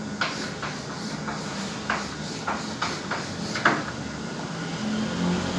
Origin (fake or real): real